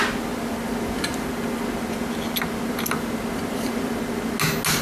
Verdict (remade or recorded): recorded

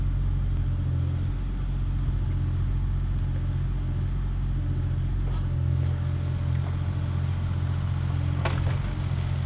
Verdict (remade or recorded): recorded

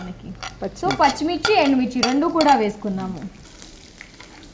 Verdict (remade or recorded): recorded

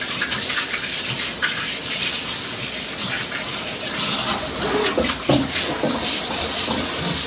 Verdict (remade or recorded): recorded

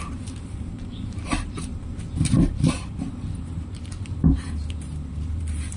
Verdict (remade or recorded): remade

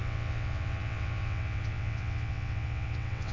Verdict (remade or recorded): remade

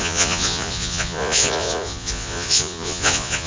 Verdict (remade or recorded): remade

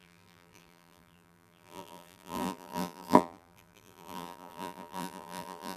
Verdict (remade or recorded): remade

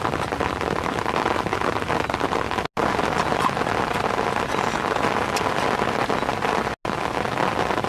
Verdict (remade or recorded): recorded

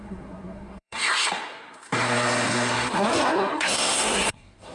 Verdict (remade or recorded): remade